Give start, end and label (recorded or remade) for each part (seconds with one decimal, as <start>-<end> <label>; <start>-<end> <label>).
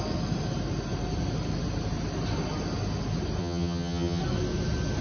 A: 0.0-3.4 recorded; 3.4-4.2 remade; 4.2-5.0 recorded